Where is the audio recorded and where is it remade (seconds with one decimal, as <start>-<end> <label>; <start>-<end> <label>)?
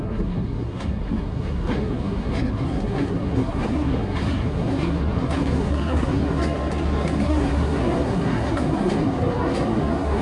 0.0-10.2 remade